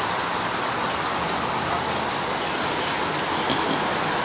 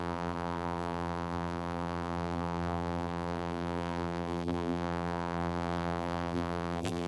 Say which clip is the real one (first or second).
first